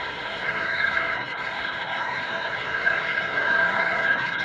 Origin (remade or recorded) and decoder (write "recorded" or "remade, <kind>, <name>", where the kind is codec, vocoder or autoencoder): remade, codec, SNAC